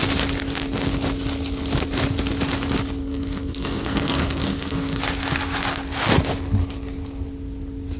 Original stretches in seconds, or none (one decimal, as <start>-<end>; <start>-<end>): 0.0-3.0; 5.0-8.0